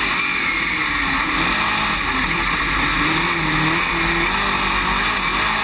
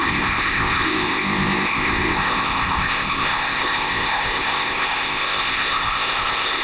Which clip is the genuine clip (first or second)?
first